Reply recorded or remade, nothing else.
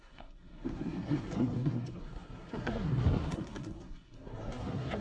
remade